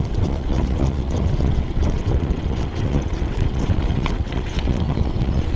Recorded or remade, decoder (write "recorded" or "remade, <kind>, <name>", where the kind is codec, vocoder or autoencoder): remade, vocoder, WaveNeXt